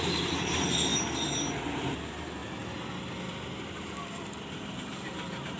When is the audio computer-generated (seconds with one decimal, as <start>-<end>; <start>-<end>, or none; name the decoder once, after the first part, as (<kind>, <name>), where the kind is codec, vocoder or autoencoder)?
0.0-0.9 (vocoder, BigVGAN v2); 1.7-2.4; 4.5-5.6